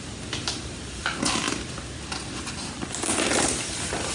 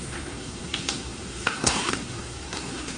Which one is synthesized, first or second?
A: second